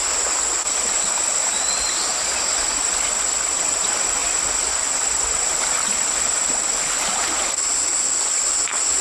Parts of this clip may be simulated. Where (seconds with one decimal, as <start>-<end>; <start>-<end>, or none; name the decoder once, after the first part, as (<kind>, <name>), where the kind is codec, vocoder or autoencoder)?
none